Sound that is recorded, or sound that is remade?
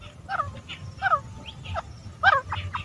recorded